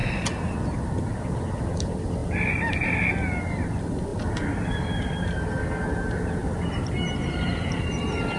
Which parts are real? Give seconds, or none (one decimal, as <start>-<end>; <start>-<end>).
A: 0.0-8.4